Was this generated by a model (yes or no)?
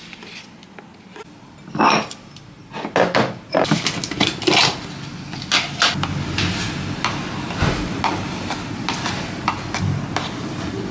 no